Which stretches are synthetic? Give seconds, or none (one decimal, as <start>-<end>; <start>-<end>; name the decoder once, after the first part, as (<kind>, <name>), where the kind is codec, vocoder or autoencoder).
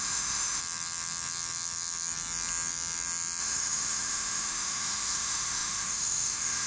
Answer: 0.0-0.6 (autoencoder, DAC-VAE); 3.4-6.7